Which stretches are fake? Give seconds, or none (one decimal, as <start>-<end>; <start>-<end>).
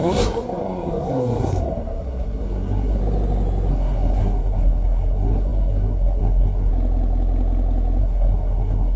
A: 0.0-3.0; 3.7-6.7; 8.0-9.0